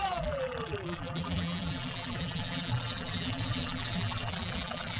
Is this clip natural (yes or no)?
no